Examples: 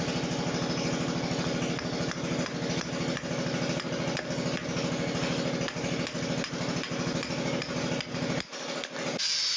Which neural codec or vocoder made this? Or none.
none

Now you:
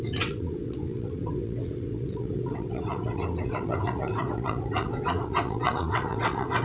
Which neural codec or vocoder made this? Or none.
vocoder, WaveNeXt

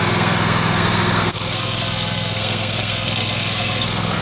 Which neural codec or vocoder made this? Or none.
codec, SNAC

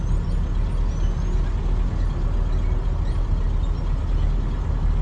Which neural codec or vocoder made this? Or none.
none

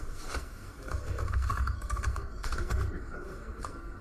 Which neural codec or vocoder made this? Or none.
codec, SNAC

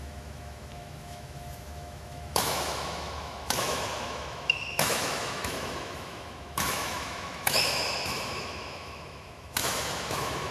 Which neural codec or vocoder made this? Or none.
autoencoder, DAC-VAE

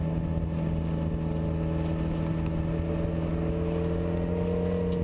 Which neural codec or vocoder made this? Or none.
none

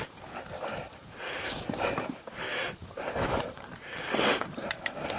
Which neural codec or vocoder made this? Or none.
vocoder, BigVGAN v2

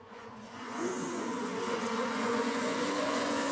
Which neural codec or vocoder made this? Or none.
vocoder, Vocos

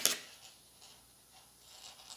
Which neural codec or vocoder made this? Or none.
none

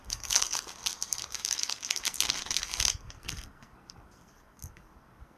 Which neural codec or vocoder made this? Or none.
codec, SNAC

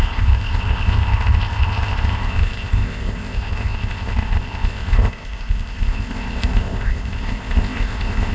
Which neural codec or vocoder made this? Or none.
codec, ZipCodec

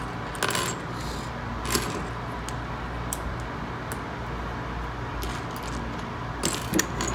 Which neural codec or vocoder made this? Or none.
none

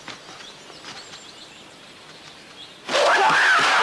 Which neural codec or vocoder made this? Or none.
none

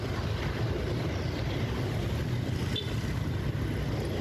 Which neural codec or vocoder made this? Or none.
none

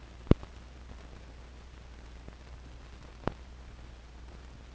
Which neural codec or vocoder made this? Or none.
none